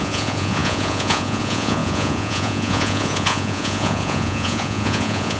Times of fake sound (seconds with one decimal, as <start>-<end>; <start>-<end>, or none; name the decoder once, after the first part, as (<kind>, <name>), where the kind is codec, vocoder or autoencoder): 0.0-5.4 (vocoder, Vocos)